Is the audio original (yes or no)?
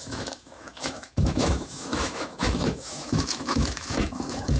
no